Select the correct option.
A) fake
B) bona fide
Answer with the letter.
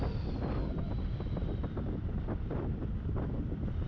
B